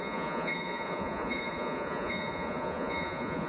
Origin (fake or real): fake